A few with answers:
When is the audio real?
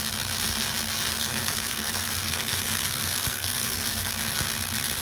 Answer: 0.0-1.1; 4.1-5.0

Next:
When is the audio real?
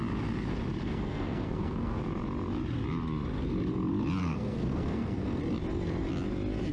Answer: 0.0-0.8; 2.0-4.2; 5.4-6.7